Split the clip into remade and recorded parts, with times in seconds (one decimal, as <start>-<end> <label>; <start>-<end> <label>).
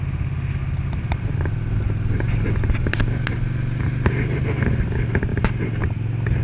0.0-6.4 recorded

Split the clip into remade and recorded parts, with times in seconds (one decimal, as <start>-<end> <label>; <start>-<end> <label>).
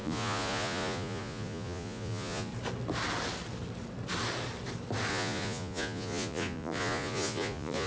0.0-2.5 remade; 2.5-5.1 recorded; 5.1-7.9 remade